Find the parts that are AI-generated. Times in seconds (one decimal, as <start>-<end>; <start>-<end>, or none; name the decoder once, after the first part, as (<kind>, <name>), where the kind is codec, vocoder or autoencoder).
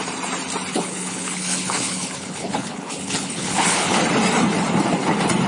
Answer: 0.7-4.0 (codec, HILCodec)